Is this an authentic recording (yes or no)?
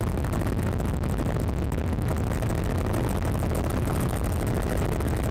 yes